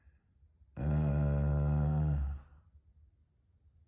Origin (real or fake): real